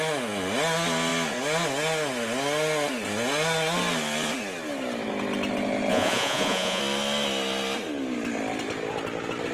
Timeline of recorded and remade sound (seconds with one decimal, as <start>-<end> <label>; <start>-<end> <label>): 0.0-5.9 recorded; 5.9-6.8 remade; 6.8-9.5 recorded